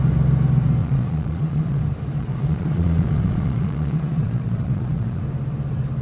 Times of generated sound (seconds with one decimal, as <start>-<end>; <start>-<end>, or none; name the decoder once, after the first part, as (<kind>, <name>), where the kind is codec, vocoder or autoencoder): 0.8-1.8 (vocoder, Vocos); 2.2-5.2